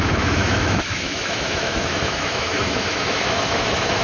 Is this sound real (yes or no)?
no